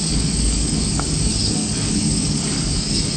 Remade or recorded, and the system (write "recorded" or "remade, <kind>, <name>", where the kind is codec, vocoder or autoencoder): remade, codec, DAC